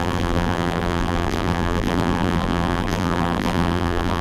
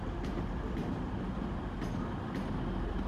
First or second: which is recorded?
second